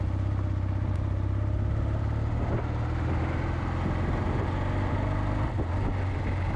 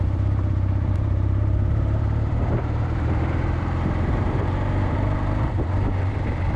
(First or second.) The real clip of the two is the first